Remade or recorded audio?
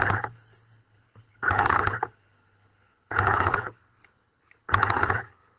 remade